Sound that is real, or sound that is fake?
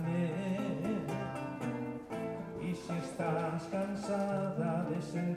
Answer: real